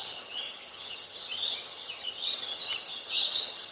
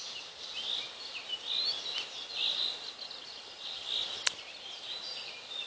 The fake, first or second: first